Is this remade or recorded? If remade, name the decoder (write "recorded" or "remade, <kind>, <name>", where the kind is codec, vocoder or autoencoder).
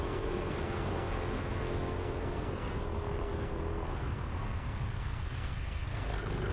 remade, codec, SNAC